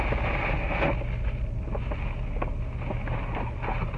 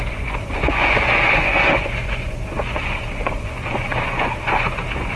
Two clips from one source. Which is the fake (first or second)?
second